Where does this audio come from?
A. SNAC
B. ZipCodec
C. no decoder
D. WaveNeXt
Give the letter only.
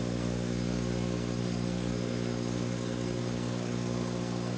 A